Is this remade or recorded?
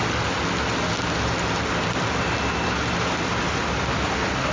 recorded